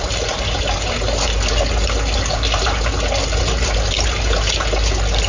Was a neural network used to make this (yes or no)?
no